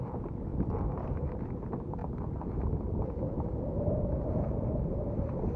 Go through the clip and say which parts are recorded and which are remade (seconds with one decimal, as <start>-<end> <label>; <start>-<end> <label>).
0.0-5.6 recorded